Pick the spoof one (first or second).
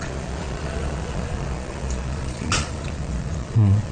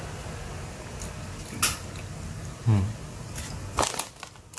first